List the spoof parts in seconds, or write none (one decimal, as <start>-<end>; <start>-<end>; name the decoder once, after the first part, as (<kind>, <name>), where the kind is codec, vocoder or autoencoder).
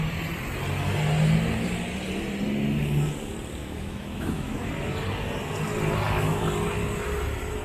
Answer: 3.6-4.7 (autoencoder, DAC-VAE)